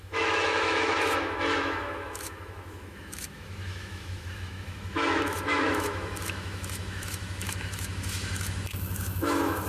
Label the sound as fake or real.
fake